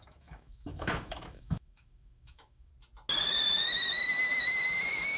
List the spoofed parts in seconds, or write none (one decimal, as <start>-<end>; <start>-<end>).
0.0-2.7